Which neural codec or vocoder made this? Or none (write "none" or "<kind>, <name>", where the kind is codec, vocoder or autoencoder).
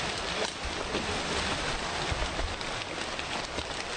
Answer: none